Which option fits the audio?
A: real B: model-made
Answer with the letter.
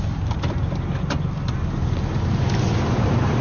B